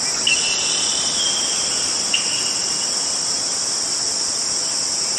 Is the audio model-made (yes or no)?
no